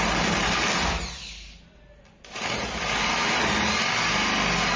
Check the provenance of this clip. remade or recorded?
recorded